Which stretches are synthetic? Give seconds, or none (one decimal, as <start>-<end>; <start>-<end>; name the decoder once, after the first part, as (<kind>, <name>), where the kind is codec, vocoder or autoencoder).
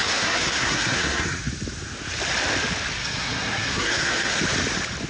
0.0-1.4 (codec, SNAC); 3.0-4.4